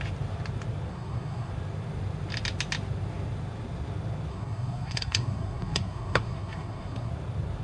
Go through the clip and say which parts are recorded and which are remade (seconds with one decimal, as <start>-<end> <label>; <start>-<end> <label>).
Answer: 0.0-0.9 recorded; 0.9-1.5 remade; 1.5-4.3 recorded; 4.3-7.1 remade; 7.1-7.6 recorded